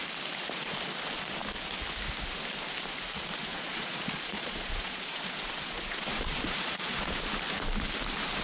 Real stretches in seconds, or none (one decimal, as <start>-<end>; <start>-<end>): 0.0-3.5; 7.1-8.4